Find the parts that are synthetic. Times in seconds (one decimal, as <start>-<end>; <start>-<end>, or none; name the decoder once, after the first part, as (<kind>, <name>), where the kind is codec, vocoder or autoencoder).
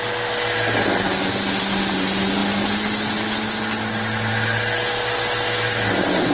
none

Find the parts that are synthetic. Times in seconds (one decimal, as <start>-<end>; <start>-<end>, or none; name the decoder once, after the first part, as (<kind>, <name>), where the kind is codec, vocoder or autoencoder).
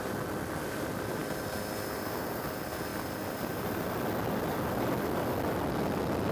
none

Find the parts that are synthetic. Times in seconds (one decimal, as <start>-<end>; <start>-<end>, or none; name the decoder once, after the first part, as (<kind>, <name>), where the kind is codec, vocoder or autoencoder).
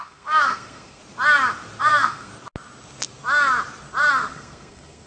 0.0-1.0 (codec, SNAC); 1.8-2.3; 4.1-5.1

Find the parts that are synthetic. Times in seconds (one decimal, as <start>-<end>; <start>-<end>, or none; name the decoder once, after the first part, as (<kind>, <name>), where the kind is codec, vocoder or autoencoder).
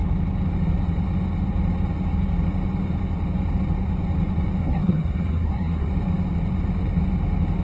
4.6-5.9 (codec, SNAC)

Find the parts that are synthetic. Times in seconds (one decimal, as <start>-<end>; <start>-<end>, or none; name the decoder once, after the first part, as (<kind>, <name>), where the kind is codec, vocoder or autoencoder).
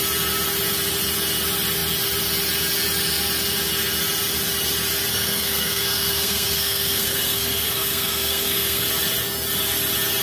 5.1-8.8 (codec, SNAC)